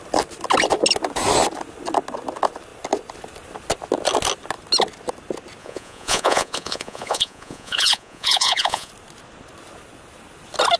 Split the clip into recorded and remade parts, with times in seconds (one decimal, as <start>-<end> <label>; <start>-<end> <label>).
0.0-5.6 recorded; 5.6-8.9 remade; 8.9-10.8 recorded